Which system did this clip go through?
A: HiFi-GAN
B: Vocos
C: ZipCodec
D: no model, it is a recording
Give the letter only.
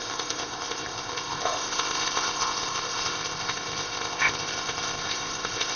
C